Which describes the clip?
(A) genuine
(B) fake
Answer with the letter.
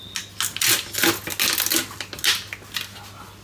A